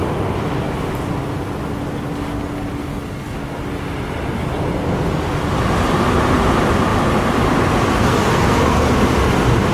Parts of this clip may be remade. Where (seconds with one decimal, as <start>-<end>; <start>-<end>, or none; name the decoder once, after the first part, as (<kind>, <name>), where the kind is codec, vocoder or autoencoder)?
2.8-3.4 (codec, SNAC); 7.9-8.9